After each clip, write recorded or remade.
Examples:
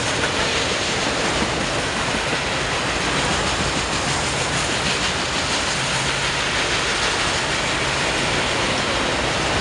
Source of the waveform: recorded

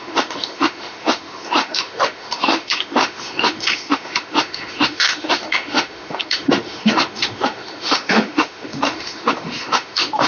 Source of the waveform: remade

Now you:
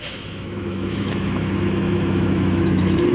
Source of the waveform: remade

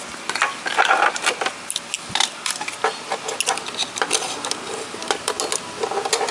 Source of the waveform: recorded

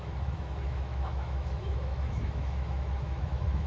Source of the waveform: remade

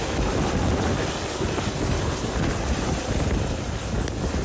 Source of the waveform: recorded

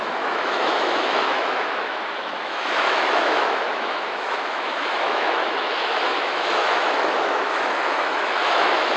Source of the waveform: remade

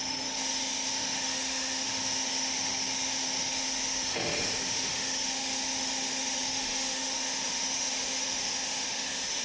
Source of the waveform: remade